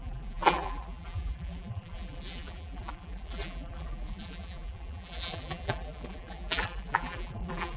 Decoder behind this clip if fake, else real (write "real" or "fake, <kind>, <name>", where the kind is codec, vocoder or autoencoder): fake, vocoder, BigVGAN v2